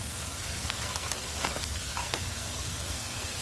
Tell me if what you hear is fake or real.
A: fake